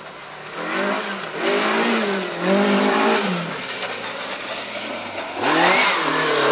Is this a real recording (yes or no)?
yes